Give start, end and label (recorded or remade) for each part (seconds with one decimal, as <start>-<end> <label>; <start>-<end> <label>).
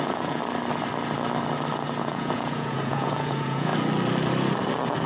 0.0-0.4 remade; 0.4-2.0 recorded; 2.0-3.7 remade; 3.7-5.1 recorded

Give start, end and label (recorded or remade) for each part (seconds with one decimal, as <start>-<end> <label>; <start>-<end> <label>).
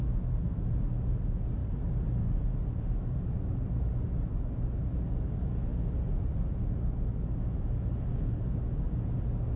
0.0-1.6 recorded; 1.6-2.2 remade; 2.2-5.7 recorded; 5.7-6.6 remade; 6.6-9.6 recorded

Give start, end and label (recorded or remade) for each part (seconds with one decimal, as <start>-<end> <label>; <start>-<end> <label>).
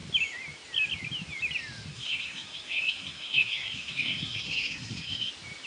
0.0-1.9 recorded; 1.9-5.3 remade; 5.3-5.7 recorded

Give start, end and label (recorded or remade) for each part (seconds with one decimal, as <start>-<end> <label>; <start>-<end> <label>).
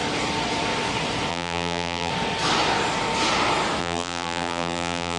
0.0-1.3 recorded; 1.3-2.1 remade; 2.1-3.8 recorded; 3.8-5.2 remade